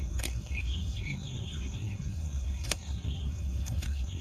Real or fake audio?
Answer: fake